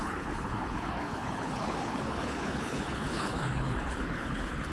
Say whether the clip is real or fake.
fake